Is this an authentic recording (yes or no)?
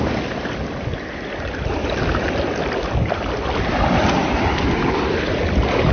yes